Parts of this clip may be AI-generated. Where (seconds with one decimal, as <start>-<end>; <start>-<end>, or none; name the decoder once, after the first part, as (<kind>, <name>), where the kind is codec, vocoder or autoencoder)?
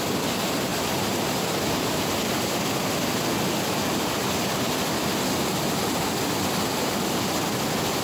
0.7-1.6 (vocoder, BigVGAN v2)